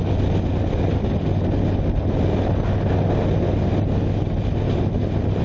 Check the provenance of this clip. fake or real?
real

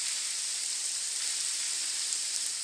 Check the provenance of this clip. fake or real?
fake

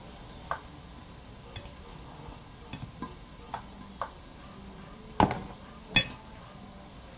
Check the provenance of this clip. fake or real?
real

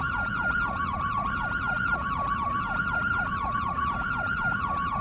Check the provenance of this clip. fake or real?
fake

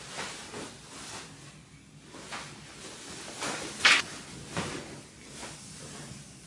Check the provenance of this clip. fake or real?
real